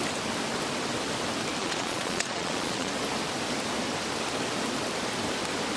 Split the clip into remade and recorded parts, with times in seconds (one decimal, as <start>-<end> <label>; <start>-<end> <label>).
0.0-1.6 recorded; 1.6-2.9 remade; 2.9-5.8 recorded